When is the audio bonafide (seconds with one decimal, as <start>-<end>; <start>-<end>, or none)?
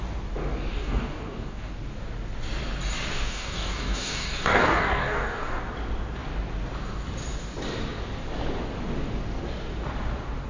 0.0-0.7; 1.7-3.1; 5.6-10.5